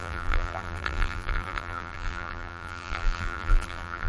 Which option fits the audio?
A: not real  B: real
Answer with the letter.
A